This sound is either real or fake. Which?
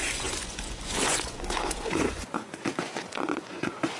fake